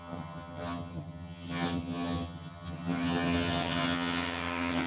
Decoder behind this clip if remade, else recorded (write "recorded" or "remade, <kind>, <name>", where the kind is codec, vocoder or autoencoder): remade, vocoder, HiFi-GAN